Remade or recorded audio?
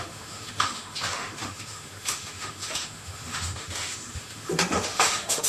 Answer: remade